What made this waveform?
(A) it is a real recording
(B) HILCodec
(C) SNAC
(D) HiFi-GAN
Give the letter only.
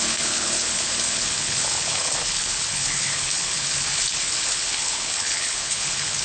B